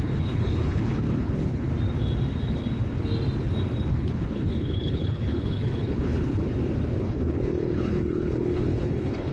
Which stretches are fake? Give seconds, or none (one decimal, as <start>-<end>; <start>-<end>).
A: 0.0-1.7; 3.9-6.5; 7.0-9.3